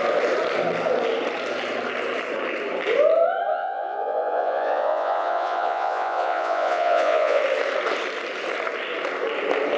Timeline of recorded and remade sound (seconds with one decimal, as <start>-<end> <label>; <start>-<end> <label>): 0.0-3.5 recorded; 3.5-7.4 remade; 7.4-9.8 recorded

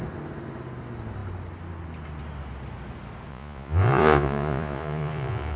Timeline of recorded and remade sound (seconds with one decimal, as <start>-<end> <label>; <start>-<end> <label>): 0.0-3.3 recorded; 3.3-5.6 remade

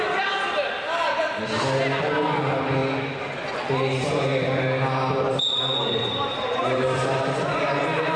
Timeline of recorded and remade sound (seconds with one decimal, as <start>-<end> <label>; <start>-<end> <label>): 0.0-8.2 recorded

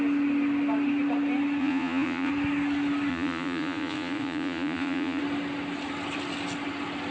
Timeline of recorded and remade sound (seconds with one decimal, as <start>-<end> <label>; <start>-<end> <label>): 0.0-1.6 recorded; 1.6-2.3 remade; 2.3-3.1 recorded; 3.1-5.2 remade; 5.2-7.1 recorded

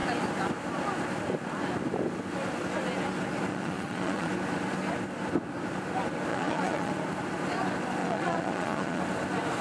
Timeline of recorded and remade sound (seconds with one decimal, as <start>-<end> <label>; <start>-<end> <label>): 0.0-3.5 recorded; 3.5-4.3 remade; 4.3-6.3 recorded; 6.3-6.9 remade; 6.9-8.0 recorded; 8.0-9.0 remade; 9.0-9.6 recorded

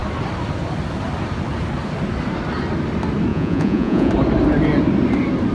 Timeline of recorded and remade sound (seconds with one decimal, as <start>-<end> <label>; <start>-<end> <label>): 0.0-3.3 recorded; 3.3-4.1 remade; 4.1-5.5 recorded